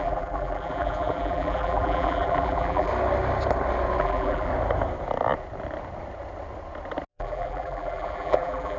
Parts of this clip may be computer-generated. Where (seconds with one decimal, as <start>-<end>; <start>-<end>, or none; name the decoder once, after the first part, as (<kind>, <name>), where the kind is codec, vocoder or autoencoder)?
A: 0.0-2.9 (vocoder, BigVGAN v2); 4.0-4.5; 7.1-8.8